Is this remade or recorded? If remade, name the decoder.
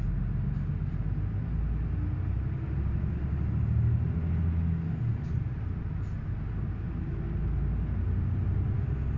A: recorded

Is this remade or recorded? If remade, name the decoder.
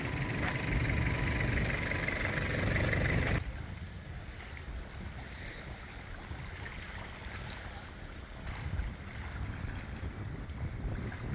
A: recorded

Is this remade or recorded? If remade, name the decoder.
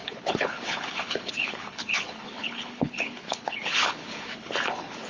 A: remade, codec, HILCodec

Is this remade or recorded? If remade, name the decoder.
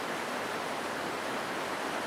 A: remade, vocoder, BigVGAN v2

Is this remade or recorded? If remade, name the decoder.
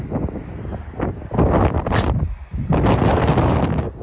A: recorded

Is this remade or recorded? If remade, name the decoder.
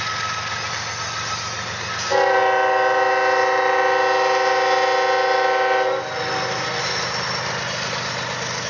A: recorded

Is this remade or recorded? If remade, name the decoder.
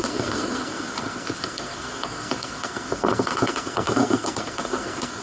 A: remade, codec, SNAC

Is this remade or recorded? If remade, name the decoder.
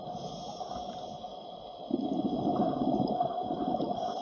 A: recorded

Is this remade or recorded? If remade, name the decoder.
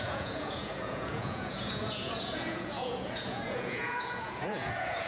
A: remade, vocoder, Vocos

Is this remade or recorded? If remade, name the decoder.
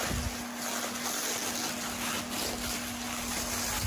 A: recorded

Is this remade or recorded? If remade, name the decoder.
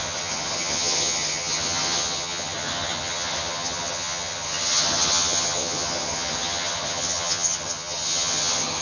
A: remade, vocoder, HiFi-GAN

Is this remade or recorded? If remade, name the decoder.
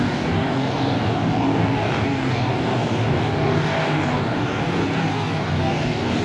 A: remade, codec, DAC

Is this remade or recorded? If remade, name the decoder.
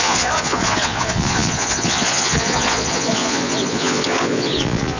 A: remade, vocoder, Vocos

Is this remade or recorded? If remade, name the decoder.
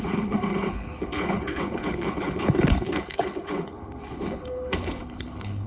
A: remade, codec, HILCodec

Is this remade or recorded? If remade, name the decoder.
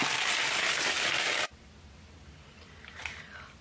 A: recorded